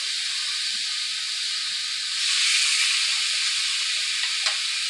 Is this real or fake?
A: real